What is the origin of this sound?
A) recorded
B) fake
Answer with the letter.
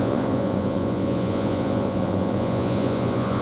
B